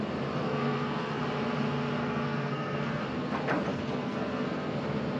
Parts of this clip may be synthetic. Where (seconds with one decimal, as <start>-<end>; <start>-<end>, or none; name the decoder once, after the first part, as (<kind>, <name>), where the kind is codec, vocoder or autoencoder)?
0.4-1.2 (codec, SNAC); 2.0-3.0; 3.7-4.8